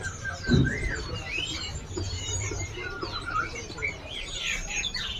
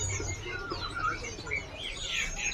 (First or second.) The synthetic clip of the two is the first